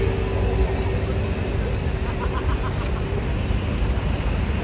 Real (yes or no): yes